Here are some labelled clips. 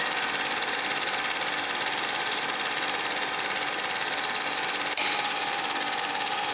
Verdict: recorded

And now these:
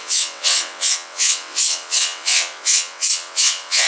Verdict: remade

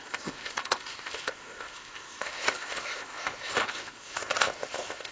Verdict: remade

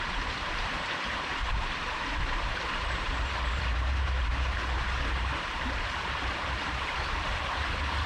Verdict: remade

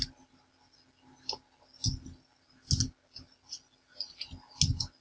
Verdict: recorded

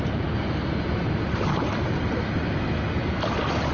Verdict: recorded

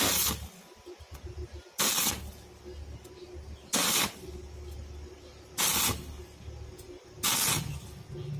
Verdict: recorded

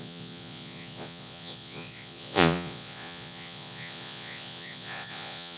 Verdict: remade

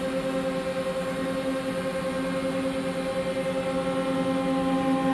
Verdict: recorded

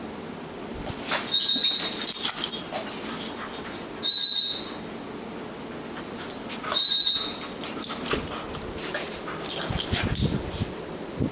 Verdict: recorded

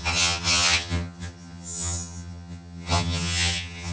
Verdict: remade